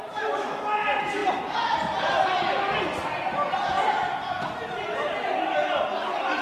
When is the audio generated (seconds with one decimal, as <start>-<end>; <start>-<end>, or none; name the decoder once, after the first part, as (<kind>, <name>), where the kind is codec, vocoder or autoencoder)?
none

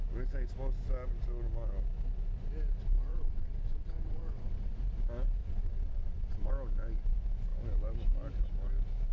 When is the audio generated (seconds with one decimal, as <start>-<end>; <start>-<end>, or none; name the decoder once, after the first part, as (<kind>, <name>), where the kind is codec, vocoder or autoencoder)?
3.1-4.7 (vocoder, WaveNeXt); 5.4-6.5

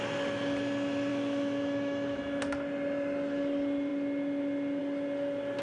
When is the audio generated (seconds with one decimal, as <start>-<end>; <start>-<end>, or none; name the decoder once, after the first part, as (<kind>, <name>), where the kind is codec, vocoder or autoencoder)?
1.1-2.4 (autoencoder, DAC-VAE)